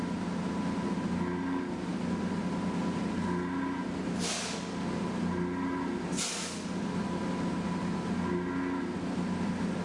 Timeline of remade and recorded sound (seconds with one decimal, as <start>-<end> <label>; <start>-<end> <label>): 0.0-9.8 recorded